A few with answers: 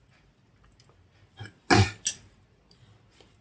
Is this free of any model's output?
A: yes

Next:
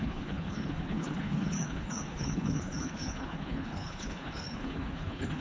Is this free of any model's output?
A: no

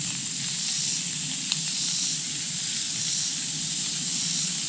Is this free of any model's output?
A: yes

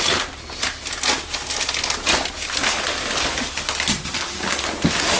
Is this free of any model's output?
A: yes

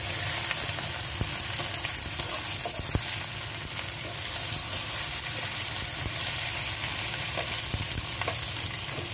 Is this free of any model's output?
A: yes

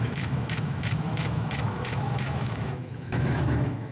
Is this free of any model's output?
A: no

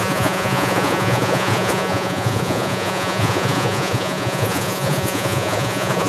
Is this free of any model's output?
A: no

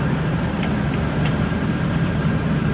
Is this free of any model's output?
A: yes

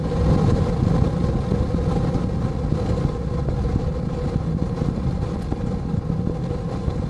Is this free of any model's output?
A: yes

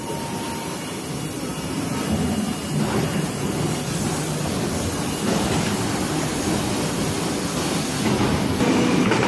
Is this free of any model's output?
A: yes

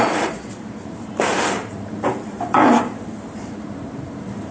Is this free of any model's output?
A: no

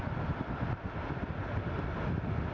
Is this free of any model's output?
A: yes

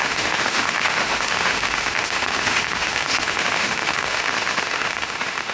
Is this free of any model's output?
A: no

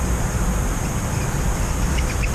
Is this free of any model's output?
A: yes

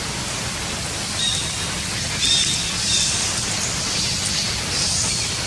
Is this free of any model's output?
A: yes